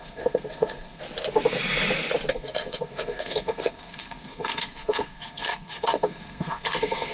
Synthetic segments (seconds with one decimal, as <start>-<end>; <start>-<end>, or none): 0.0-1.0; 2.3-7.1